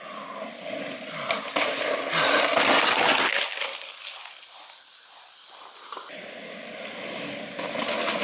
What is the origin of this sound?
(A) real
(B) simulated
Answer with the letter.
A